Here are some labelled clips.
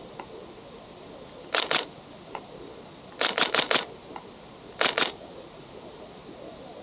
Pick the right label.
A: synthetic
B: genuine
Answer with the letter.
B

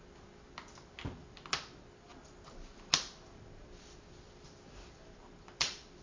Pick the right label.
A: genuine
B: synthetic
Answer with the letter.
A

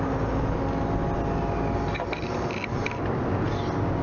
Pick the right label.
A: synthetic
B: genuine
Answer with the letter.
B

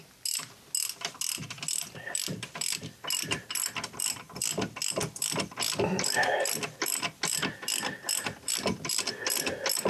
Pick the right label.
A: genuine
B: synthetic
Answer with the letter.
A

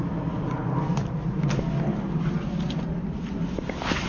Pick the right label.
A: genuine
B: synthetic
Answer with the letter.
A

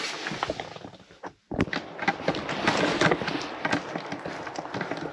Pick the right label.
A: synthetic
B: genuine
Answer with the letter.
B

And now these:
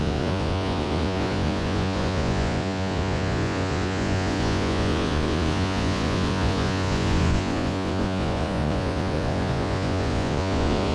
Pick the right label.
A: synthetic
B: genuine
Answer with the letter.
A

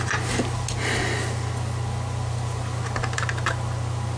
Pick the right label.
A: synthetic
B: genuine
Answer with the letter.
B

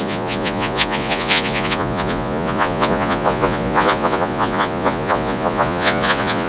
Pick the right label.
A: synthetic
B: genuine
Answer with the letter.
A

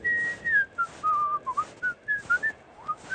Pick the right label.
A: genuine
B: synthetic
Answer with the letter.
A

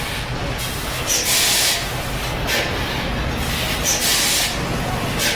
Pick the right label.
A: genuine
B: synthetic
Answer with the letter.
A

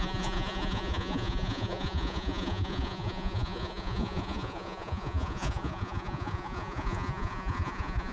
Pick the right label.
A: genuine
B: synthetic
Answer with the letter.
B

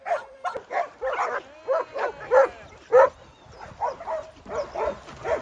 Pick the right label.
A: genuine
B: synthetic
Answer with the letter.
A